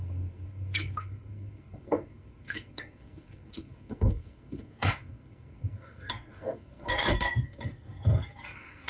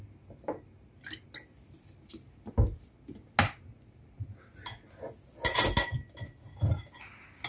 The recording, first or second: second